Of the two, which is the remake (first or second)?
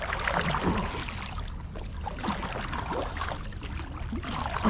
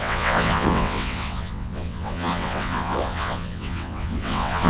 second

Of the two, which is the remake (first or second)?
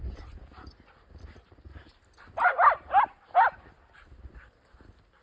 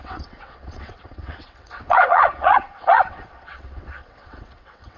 second